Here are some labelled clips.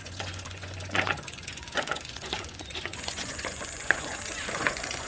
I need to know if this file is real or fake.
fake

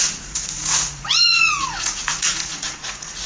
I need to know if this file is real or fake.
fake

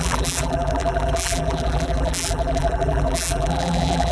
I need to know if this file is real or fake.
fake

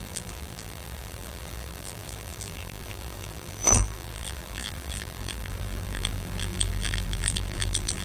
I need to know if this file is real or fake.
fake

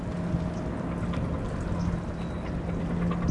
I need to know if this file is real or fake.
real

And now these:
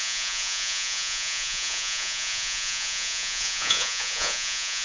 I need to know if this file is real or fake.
fake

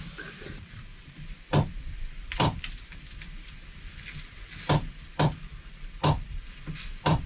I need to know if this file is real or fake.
fake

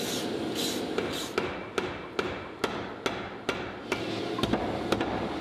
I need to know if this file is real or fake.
real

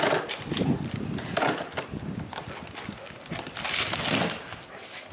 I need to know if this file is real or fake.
real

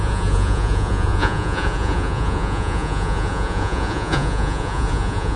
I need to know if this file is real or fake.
fake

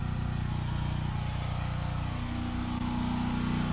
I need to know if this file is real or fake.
real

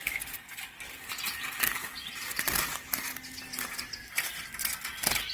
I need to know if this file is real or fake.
real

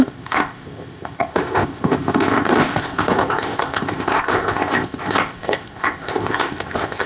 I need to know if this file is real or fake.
fake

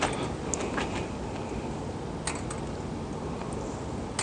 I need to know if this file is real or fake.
real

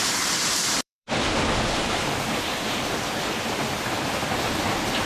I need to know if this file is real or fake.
fake